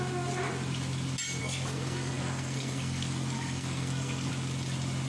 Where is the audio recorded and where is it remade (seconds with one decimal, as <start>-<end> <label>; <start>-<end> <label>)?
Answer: 0.0-1.4 recorded; 1.4-4.3 remade; 4.3-5.1 recorded